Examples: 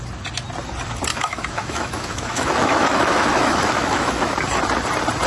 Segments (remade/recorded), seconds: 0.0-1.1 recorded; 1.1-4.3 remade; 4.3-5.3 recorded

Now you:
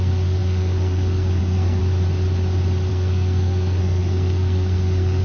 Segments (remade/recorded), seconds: 0.0-1.8 remade; 1.8-2.9 recorded; 2.9-5.2 remade

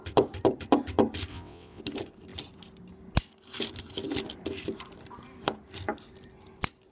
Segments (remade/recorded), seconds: 0.0-1.3 recorded; 1.3-1.8 remade; 1.8-6.9 recorded

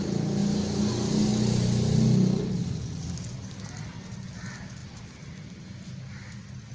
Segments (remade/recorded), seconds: 0.0-6.7 recorded

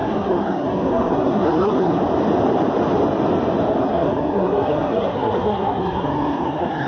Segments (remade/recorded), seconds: 0.0-2.0 remade; 2.0-3.8 recorded; 3.8-6.9 remade

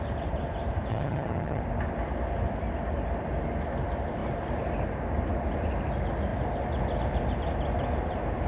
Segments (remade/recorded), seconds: 0.0-0.9 recorded; 0.9-1.6 remade; 1.6-8.5 recorded

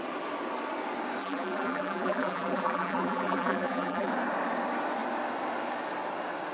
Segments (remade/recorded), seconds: 0.0-1.2 recorded; 1.2-4.1 remade; 4.1-6.5 recorded